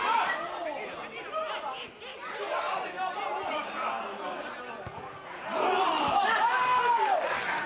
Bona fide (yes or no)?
yes